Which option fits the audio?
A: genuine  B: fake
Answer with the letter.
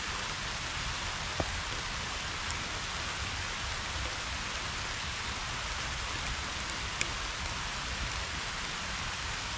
A